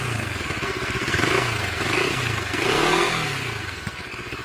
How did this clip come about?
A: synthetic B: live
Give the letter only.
A